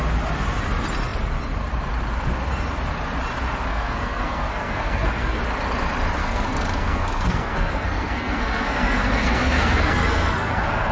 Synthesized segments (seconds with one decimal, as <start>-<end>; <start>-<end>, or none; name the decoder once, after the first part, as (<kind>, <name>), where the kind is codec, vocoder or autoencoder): 3.7-5.4 (codec, SNAC); 6.2-10.9